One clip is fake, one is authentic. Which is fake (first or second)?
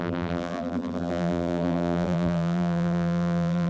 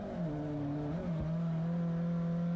first